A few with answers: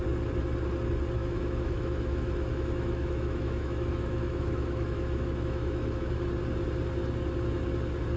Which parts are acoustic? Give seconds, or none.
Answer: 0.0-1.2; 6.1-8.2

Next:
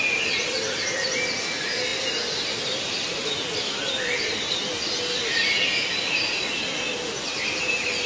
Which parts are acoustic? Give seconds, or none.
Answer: 0.0-8.1

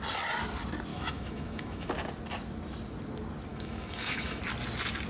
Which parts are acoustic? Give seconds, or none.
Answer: 0.0-0.9; 1.9-3.5; 4.4-5.1